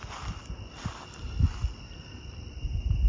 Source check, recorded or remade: recorded